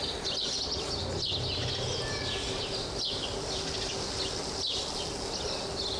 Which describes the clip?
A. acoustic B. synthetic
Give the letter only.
A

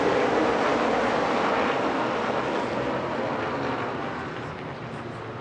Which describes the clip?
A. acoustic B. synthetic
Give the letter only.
A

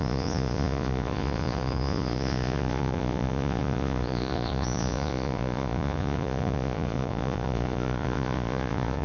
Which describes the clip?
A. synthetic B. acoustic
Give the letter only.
A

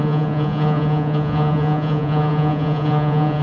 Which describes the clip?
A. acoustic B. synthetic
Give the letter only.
B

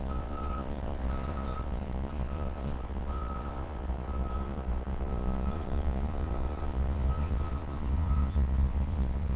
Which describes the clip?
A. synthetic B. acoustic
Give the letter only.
A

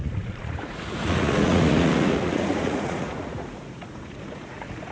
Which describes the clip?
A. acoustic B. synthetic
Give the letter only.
B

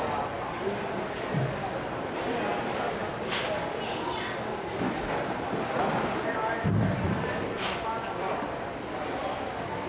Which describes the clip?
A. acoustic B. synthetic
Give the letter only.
A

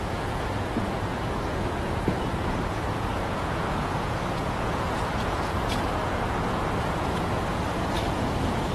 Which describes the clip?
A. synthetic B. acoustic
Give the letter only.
A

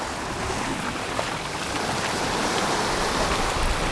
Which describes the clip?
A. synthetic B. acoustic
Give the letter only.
B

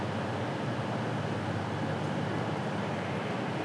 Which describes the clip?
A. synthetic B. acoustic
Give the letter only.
B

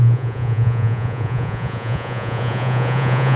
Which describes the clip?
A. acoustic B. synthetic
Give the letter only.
B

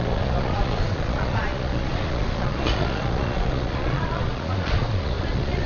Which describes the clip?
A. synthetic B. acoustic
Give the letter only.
A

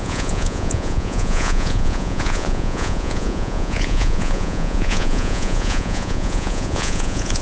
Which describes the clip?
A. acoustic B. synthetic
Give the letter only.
B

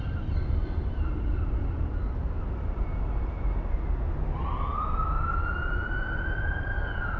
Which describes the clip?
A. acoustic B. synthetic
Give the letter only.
A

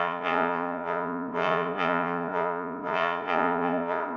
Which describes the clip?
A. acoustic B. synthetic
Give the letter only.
B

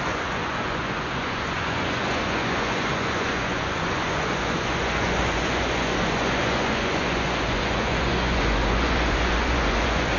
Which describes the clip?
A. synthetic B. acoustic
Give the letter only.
A